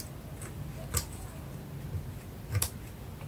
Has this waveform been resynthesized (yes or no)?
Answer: no